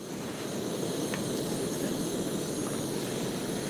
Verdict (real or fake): real